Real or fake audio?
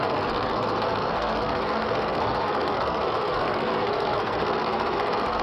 fake